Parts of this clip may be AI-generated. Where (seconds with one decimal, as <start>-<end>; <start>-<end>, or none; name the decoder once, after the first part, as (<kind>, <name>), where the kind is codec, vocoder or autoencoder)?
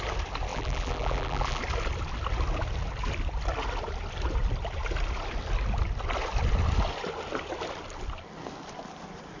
0.5-1.6 (vocoder, BigVGAN v2)